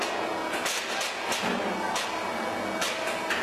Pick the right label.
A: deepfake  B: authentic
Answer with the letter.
B